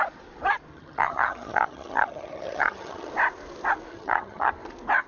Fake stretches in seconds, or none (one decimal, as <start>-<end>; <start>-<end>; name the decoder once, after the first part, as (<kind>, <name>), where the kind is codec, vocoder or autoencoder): 0.7-3.1 (vocoder, HiFi-GAN); 3.9-4.5